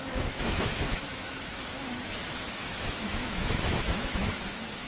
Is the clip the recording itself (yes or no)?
no